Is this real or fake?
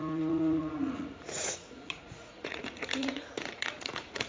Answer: fake